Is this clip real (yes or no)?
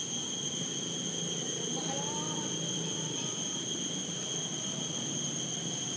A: yes